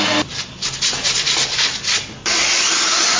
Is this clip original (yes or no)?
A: yes